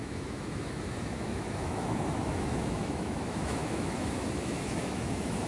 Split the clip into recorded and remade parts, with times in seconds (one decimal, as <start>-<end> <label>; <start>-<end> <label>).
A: 0.0-5.5 remade